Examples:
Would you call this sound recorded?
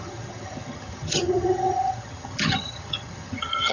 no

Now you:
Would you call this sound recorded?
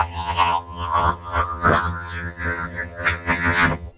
no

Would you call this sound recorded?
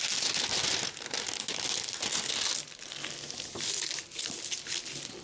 yes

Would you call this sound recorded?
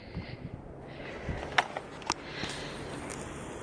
yes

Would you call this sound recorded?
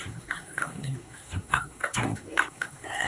no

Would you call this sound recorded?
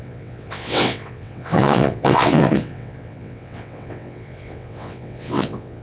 no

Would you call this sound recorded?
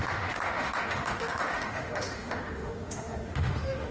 no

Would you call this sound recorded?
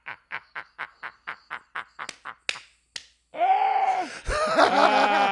yes